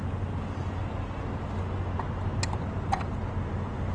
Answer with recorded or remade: recorded